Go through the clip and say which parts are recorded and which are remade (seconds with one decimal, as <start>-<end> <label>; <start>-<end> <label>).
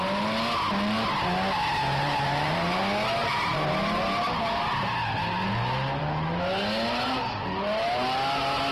0.0-2.0 recorded; 2.0-2.8 remade; 2.8-3.2 recorded; 3.2-3.7 remade; 3.7-8.7 recorded